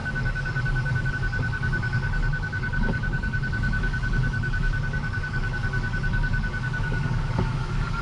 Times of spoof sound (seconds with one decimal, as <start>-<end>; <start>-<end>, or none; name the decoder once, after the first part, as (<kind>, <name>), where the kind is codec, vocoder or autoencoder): 0.0-8.0 (codec, DAC)